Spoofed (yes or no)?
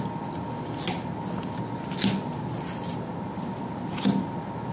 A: no